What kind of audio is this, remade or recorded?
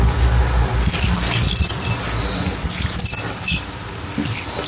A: recorded